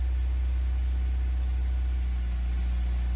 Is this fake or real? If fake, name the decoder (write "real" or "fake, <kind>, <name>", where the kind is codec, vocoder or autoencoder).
real